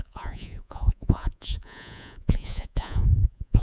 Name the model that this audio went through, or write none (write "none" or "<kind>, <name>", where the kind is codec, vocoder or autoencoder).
vocoder, Vocos